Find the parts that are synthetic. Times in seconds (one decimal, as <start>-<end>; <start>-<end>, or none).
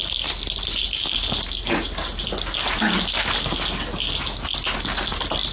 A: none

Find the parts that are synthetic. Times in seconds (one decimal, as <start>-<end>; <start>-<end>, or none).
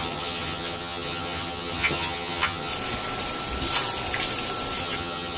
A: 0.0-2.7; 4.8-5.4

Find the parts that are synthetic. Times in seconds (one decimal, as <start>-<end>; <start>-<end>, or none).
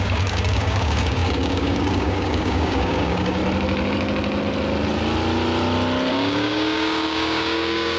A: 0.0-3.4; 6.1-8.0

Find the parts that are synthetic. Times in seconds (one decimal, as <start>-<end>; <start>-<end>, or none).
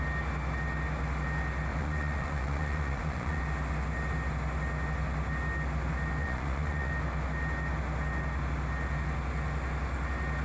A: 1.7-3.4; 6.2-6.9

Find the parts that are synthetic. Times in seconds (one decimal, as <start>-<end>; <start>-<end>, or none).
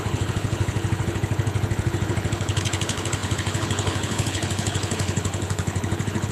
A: 0.0-6.3